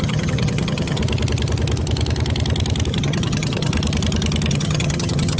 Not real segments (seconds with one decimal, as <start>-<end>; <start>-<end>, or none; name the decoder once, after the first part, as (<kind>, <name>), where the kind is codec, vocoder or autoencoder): 0.0-1.0 (vocoder, HiFi-GAN); 2.9-3.7; 4.5-5.4